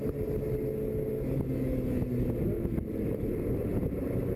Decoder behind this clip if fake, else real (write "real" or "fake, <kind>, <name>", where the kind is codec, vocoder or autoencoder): real